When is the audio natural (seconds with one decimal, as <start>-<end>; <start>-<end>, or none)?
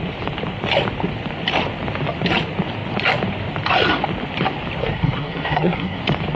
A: 0.0-4.8; 6.0-6.4